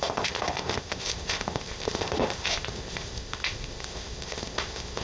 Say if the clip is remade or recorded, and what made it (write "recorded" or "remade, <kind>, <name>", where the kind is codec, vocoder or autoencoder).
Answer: remade, codec, ZipCodec